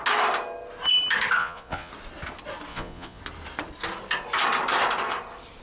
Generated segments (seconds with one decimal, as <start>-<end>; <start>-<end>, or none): 1.4-1.9; 2.7-3.2